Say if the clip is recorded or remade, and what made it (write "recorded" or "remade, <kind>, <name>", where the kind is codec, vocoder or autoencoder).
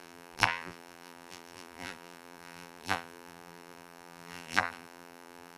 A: remade, vocoder, BigVGAN v2